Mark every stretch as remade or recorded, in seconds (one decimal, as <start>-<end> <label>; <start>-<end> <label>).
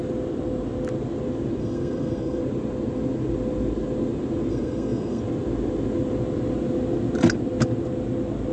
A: 0.0-1.6 recorded; 1.6-2.4 remade; 2.4-4.5 recorded; 4.5-5.2 remade; 5.2-8.5 recorded